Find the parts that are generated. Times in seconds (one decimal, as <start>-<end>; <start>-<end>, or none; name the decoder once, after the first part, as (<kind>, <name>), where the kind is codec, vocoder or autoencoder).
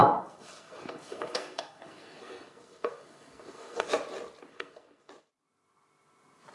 0.0-3.9 (codec, SNAC); 4.5-5.1